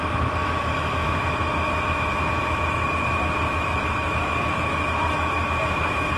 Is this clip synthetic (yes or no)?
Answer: yes